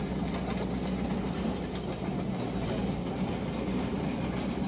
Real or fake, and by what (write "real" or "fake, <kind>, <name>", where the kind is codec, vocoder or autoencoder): real